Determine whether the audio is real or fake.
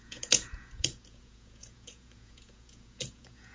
fake